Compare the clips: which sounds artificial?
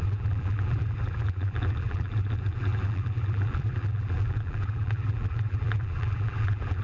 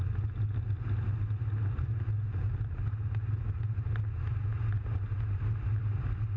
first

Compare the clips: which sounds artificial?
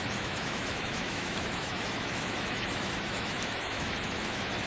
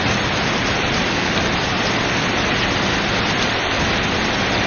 first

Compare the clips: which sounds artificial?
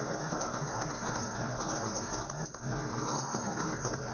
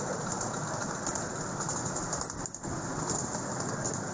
first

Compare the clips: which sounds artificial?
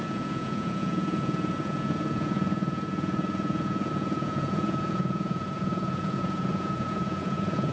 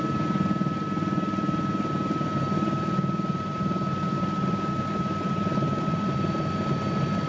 first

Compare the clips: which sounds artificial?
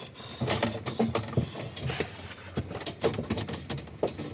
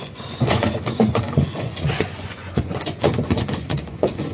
second